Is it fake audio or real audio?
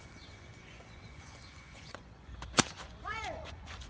fake